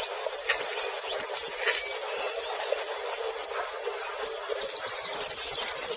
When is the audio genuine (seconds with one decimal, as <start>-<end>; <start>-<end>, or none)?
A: 0.0-3.0; 3.7-6.0